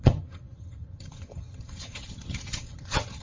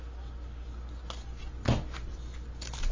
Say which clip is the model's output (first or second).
first